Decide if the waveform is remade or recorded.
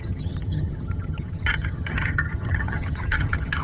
remade